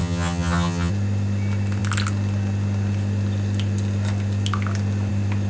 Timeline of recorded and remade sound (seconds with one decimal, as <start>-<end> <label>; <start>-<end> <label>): 0.0-0.9 remade; 0.9-5.5 recorded